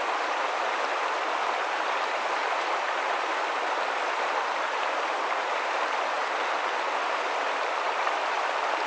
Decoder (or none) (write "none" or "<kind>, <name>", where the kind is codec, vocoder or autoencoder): vocoder, BigVGAN v2